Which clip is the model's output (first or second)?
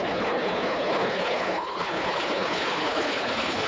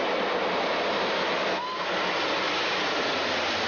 first